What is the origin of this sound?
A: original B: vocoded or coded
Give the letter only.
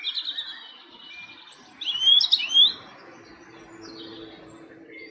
A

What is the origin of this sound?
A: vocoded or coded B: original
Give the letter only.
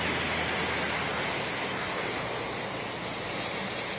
B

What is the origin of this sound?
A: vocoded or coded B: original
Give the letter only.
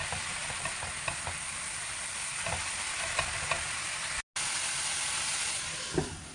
B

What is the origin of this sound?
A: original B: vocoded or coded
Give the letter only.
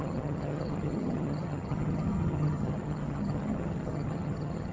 B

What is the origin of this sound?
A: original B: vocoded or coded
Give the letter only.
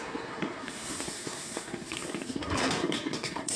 B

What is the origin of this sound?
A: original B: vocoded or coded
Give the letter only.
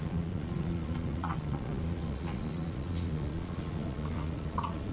B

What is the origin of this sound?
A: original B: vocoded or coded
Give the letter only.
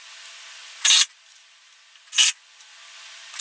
A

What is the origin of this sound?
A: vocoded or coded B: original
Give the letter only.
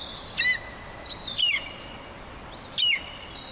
B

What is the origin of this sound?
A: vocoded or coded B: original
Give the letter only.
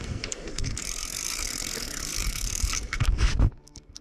A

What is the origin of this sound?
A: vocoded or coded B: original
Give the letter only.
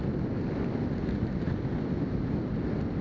B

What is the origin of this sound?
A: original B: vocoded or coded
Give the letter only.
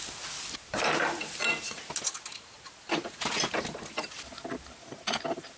A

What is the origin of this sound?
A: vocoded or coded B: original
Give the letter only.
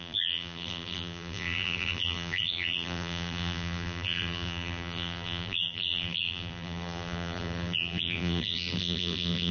A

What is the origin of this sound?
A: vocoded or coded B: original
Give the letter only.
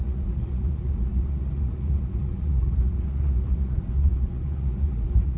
A